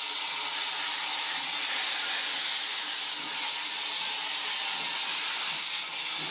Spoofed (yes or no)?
no